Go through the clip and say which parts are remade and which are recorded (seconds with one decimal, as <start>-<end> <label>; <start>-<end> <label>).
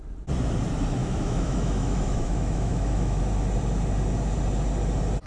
0.0-1.0 recorded; 1.0-3.2 remade; 3.2-5.3 recorded